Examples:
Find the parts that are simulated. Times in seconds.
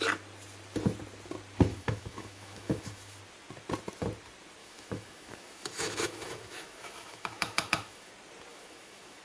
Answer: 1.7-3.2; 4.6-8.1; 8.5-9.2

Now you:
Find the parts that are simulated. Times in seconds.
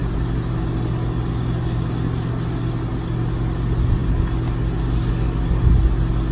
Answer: none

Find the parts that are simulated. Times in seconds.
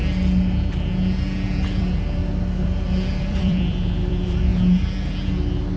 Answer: 1.8-2.2; 3.2-4.5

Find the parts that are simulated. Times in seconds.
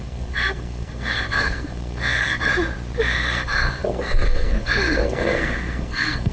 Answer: 0.0-2.5; 3.0-6.3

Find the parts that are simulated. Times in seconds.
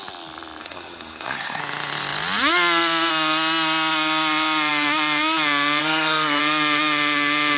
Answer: 0.6-1.6; 5.8-6.4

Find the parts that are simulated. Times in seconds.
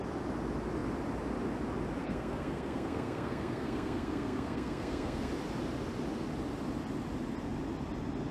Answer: 2.0-5.3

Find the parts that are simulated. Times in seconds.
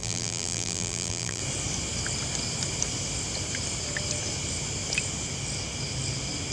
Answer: 0.0-1.4